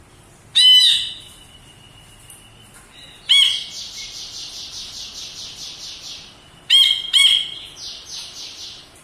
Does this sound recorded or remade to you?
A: recorded